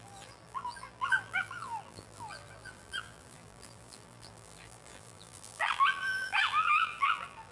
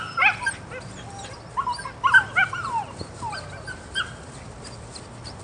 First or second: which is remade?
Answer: first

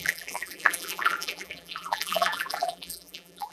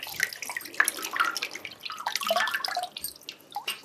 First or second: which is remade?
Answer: first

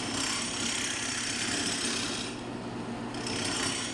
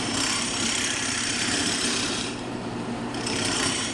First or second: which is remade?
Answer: second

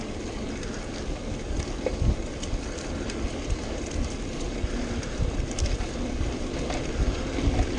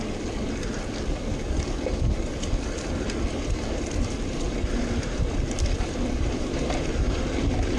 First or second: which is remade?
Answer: second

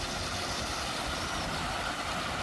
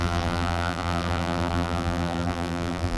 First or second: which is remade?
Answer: second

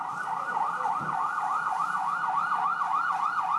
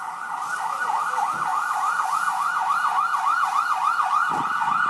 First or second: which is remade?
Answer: first